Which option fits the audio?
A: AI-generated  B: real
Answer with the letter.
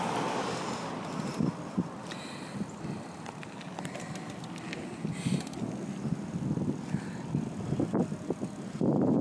B